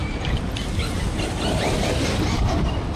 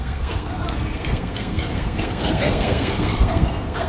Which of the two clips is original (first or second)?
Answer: first